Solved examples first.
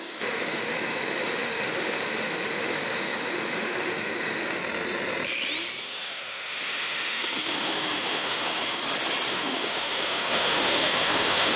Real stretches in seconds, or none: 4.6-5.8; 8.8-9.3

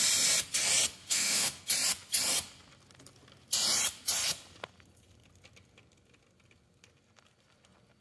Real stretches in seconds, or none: 0.0-1.0; 1.6-8.0